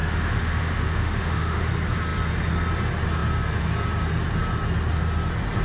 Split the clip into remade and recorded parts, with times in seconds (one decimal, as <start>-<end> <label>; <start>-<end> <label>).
0.0-1.7 remade; 1.7-5.6 recorded